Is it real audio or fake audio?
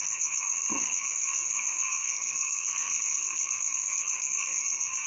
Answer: fake